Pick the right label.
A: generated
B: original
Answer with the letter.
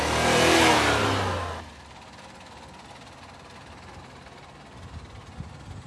B